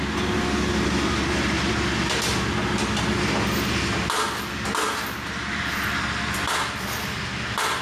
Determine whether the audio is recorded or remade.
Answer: recorded